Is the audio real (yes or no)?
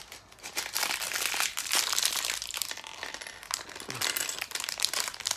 no